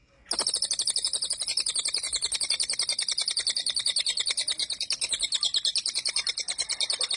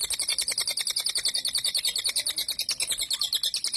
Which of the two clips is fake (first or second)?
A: first